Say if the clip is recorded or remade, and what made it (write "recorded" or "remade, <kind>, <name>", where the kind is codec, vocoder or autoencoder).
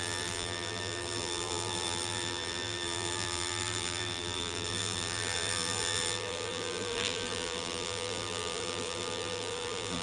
remade, vocoder, BigVGAN v2